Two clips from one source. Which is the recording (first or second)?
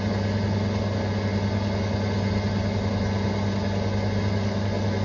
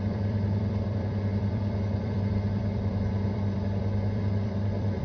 first